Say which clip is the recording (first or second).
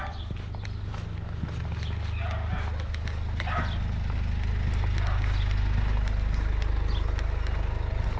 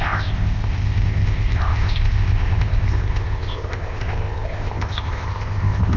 first